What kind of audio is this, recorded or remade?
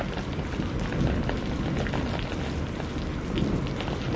recorded